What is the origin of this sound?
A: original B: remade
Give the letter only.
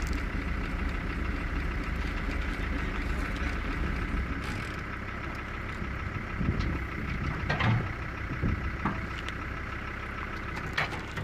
A